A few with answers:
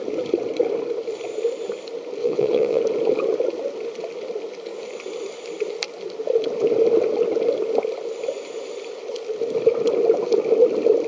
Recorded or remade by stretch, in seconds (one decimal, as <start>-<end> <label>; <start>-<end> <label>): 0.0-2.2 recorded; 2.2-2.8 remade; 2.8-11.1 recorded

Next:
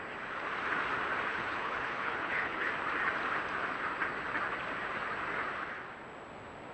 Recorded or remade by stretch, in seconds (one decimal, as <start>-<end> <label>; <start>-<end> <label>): 0.0-1.3 recorded; 1.3-2.7 remade; 2.7-6.7 recorded

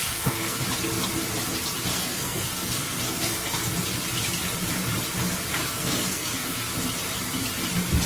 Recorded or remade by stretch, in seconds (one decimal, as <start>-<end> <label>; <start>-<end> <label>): 0.0-0.6 remade; 0.6-1.9 recorded; 1.9-3.7 remade; 3.7-5.6 recorded; 5.6-6.6 remade; 6.6-8.1 recorded